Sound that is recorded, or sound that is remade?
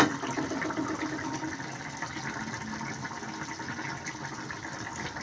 recorded